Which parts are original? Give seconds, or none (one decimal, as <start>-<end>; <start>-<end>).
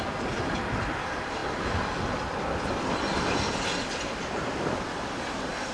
0.0-5.7